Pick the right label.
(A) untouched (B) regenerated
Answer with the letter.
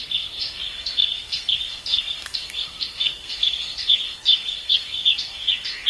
B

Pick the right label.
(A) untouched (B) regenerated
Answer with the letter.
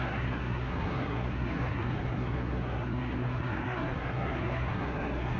B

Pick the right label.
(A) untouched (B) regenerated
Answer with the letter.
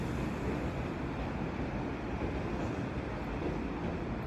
A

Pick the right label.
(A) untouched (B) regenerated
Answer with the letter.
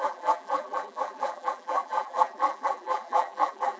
B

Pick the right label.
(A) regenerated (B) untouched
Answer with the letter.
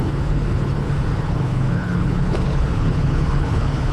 A